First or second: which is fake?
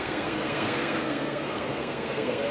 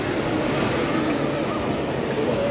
first